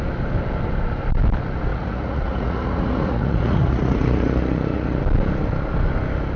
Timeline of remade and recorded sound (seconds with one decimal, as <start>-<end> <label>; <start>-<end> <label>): 0.0-1.7 recorded; 1.7-5.0 remade; 5.0-6.4 recorded